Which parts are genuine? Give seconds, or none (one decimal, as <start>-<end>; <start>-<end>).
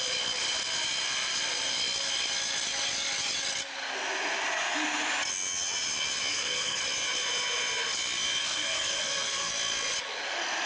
0.0-6.3; 6.8-8.4; 9.5-10.7